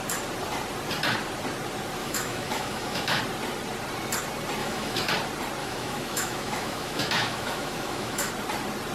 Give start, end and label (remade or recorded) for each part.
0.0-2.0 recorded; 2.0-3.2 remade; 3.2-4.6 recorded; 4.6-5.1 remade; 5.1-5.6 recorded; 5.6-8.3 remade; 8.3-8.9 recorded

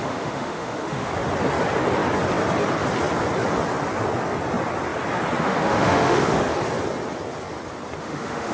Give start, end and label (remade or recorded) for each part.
0.0-1.1 remade; 1.1-5.4 recorded; 5.4-6.5 remade; 6.5-8.0 recorded; 8.0-8.5 remade

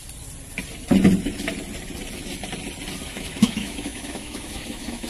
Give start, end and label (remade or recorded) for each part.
0.0-3.1 recorded; 3.1-5.1 remade

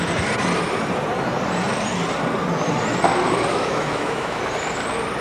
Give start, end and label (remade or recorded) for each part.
0.0-3.5 recorded; 3.5-4.4 remade; 4.4-5.2 recorded

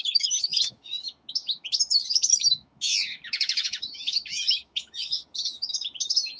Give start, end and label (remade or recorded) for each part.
0.0-6.4 remade

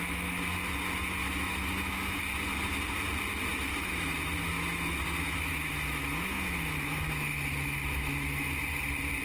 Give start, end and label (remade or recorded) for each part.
0.0-1.2 recorded; 1.2-2.2 remade; 2.2-3.5 recorded; 3.5-8.5 remade; 8.5-9.2 recorded

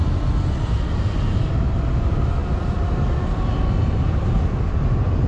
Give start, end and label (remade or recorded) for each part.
0.0-5.3 recorded